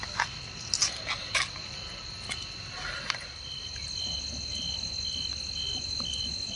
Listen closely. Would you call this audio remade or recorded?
recorded